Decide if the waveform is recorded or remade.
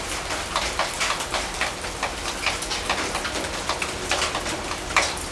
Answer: recorded